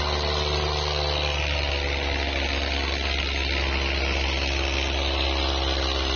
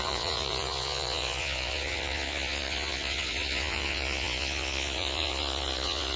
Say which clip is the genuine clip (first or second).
first